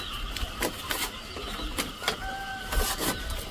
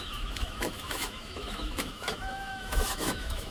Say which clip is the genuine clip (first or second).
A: first